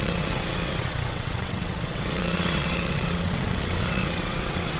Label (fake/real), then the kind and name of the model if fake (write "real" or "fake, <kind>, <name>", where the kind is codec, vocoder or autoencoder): fake, vocoder, WaveNeXt